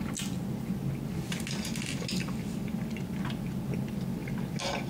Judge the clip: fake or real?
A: real